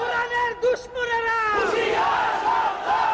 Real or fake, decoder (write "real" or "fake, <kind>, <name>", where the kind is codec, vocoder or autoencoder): real